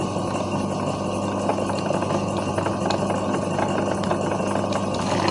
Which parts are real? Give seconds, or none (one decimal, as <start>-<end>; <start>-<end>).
0.0-5.3